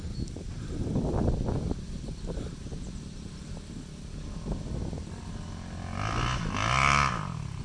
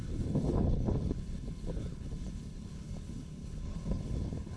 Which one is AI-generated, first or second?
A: second